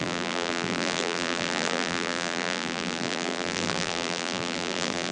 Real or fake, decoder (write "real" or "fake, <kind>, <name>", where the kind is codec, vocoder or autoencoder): fake, vocoder, BigVGAN v2